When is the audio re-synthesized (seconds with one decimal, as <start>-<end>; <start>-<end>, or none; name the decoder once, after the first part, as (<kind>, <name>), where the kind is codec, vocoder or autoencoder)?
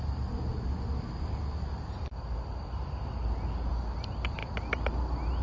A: none